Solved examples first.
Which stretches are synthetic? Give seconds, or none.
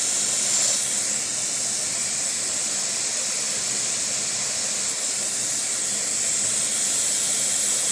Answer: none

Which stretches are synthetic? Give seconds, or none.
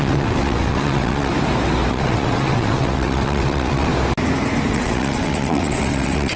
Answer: 0.0-1.3 (vocoder, WaveNeXt); 1.9-3.9; 4.7-6.4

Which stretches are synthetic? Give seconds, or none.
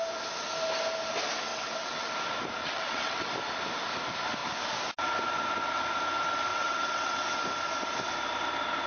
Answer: 1.5-2.1 (vocoder, WaveNeXt); 2.6-3.3; 6.5-7.4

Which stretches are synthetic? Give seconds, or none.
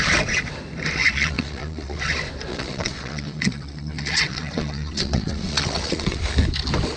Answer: 1.0-2.0 (vocoder, WaveNeXt); 2.5-6.2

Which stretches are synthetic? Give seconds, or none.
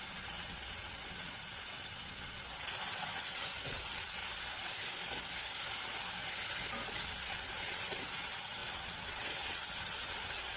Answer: 0.0-4.2 (vocoder, WaveNeXt); 7.0-10.6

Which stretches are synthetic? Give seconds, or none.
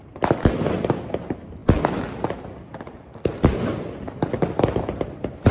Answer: none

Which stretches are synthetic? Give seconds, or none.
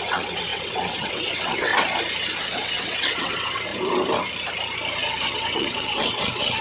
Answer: 0.0-1.7 (vocoder, WaveNeXt); 2.4-3.7; 5.1-6.6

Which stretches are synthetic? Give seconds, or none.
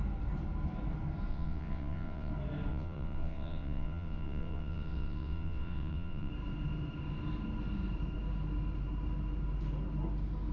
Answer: 1.3-2.3 (vocoder, WaveNeXt); 2.7-6.3